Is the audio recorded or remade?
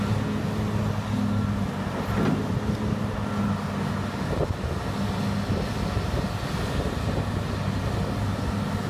recorded